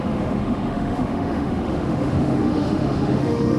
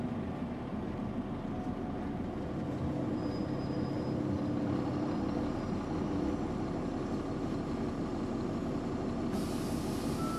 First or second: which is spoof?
first